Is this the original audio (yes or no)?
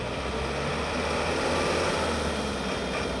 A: yes